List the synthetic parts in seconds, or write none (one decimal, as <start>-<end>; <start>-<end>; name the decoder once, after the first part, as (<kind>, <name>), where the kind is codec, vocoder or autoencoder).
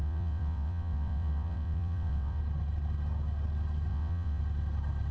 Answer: 0.0-2.4 (vocoder, WaveNeXt); 3.9-4.4